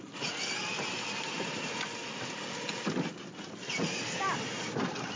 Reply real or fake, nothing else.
real